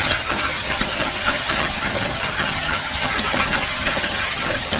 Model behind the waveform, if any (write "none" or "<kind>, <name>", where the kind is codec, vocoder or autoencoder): vocoder, HiFi-GAN